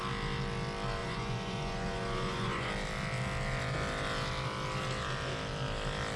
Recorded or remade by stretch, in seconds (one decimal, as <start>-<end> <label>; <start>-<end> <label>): 0.0-1.0 recorded; 1.0-2.7 remade; 2.7-6.2 recorded